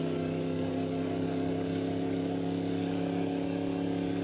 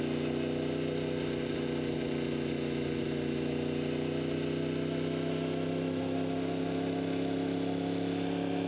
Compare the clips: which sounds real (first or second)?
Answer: second